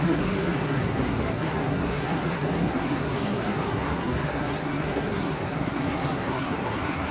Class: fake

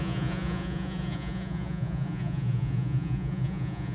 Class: fake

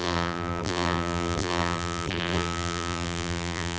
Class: fake